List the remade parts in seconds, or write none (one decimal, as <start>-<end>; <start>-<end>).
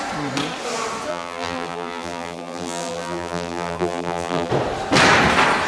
1.1-4.5